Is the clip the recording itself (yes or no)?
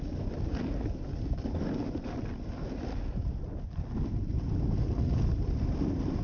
yes